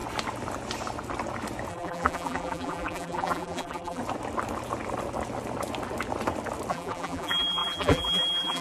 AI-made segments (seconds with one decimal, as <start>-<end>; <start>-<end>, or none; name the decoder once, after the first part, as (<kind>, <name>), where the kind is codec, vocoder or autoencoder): 1.7-4.0 (vocoder, BigVGAN v2); 6.7-8.6

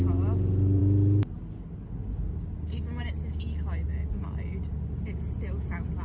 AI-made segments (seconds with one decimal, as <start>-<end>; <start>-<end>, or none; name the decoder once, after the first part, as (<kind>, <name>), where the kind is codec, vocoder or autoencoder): none

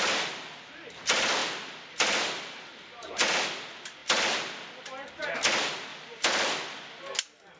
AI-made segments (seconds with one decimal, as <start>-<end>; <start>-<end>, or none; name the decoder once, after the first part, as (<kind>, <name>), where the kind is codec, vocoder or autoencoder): 1.4-3.4 (vocoder, BigVGAN v2); 5.9-7.6

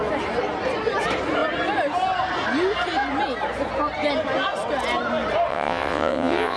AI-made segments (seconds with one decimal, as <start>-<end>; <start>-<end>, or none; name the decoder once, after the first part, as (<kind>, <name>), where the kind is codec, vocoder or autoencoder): 5.5-6.6 (vocoder, WaveNeXt)

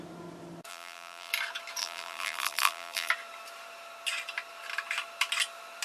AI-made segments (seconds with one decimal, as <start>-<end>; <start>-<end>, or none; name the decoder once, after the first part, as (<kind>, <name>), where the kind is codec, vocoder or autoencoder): 0.7-1.3 (vocoder, BigVGAN v2); 1.8-3.1